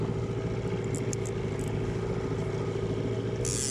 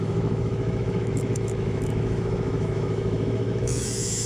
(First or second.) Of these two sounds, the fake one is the second